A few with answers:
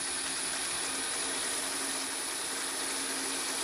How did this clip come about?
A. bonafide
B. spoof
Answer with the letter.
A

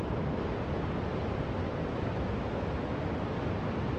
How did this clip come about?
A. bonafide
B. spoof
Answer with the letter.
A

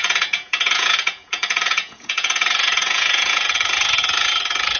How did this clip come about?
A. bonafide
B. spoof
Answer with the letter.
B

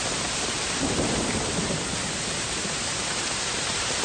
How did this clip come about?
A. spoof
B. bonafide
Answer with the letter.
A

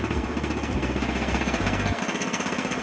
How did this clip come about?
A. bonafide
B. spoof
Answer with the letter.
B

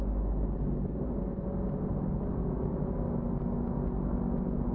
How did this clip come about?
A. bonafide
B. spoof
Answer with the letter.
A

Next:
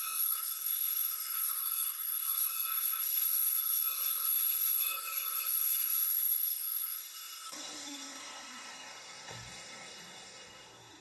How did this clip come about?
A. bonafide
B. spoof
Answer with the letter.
B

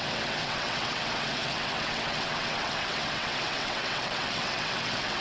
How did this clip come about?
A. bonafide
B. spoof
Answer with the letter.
B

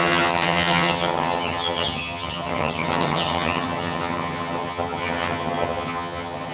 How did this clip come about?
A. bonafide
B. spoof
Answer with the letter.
B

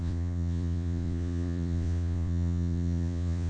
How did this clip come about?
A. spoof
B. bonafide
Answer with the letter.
A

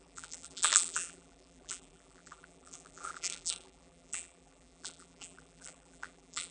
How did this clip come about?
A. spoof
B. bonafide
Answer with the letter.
A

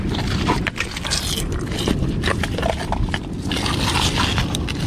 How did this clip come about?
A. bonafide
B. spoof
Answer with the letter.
A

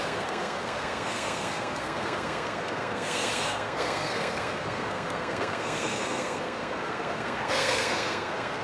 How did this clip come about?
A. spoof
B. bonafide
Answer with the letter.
A